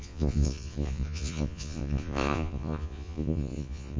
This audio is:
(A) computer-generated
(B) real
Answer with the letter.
A